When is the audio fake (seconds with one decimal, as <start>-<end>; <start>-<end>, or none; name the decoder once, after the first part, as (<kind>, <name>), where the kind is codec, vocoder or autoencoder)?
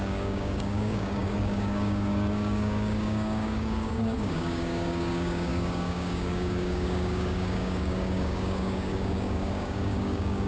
0.0-10.5 (codec, DAC)